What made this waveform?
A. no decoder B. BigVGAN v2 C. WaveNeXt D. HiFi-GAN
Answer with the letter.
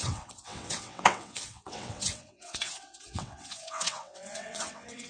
C